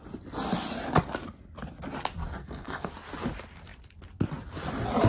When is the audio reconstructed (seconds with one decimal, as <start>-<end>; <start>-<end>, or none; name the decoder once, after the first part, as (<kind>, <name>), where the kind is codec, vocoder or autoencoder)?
2.4-2.9 (codec, SNAC)